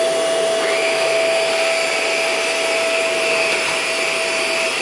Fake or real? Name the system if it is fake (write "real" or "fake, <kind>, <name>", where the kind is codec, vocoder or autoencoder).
real